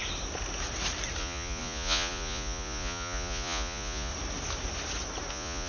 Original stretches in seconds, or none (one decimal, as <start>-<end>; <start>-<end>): 0.0-1.2; 4.1-5.3